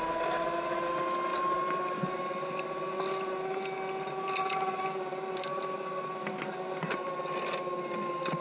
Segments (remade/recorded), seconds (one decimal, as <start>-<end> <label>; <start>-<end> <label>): 0.0-8.4 recorded